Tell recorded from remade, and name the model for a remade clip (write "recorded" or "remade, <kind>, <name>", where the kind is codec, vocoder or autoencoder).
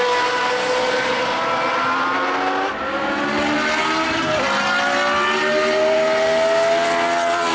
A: recorded